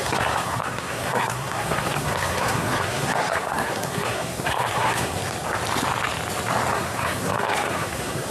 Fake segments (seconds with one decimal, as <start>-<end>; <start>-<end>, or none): 0.0-5.2; 6.7-8.3